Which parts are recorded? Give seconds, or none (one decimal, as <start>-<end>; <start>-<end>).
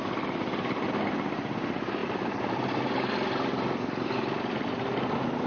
0.0-5.5